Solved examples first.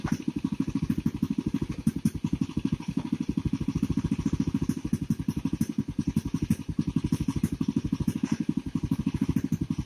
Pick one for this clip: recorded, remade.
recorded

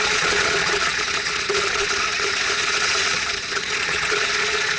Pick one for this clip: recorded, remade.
remade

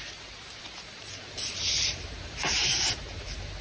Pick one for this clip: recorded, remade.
remade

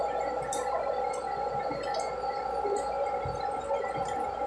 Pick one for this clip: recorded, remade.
recorded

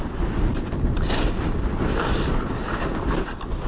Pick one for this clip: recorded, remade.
recorded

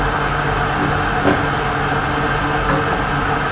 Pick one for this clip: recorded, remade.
recorded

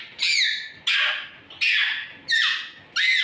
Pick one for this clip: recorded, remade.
recorded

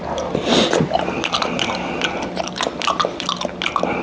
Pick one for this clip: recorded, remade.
recorded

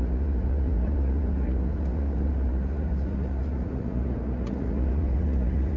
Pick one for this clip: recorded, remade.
remade